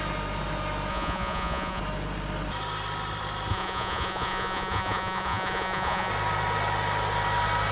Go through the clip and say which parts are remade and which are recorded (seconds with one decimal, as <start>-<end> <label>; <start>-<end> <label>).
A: 0.0-0.9 recorded; 0.9-1.8 remade; 1.8-3.5 recorded; 3.5-6.1 remade; 6.1-7.7 recorded